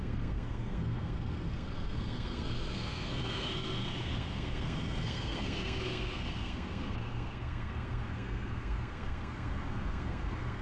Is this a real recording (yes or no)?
no